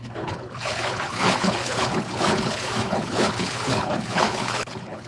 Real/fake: fake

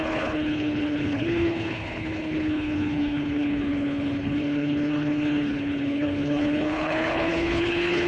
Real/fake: fake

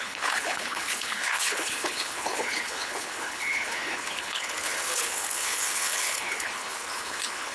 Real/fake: fake